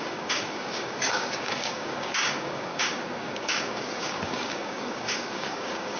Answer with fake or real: fake